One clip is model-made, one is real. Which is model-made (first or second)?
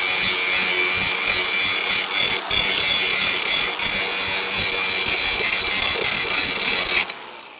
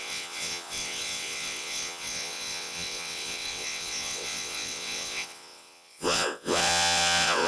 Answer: second